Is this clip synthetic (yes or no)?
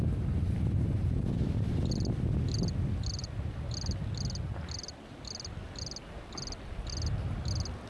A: no